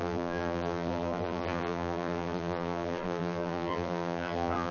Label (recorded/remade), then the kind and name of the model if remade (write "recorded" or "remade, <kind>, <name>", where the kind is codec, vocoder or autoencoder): remade, vocoder, BigVGAN v2